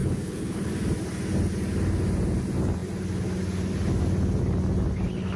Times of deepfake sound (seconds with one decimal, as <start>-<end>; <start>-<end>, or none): 0.0-0.7